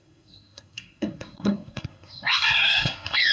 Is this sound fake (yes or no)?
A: yes